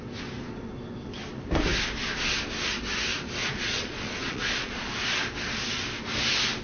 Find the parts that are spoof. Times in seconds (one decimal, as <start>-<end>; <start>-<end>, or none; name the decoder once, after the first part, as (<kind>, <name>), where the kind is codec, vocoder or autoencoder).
3.4-4.9 (vocoder, Vocos)